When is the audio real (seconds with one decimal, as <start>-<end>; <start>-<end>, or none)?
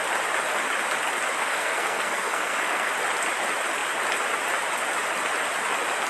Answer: 0.0-1.4; 2.9-6.1